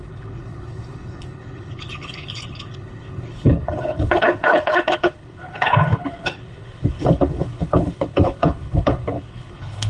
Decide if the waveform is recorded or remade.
remade